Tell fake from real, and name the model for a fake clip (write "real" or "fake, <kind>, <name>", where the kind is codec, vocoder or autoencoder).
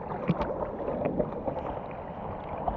real